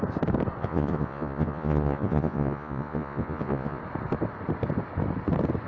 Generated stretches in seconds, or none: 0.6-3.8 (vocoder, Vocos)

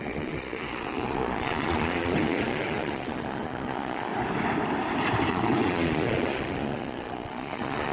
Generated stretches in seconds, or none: 0.0-4.1 (vocoder, Vocos); 5.3-7.9

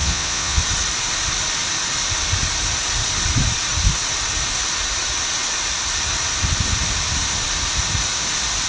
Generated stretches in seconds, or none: 0.0-0.6 (vocoder, Vocos)

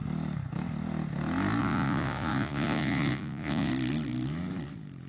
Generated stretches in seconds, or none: 1.6-3.7 (vocoder, Vocos)

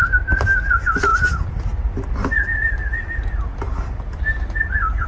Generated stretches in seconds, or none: none

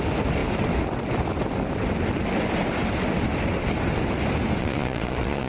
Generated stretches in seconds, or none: 4.6-5.5 (vocoder, Vocos)

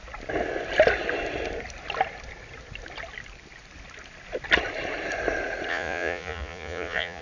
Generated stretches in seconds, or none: 5.7-7.2 (vocoder, Vocos)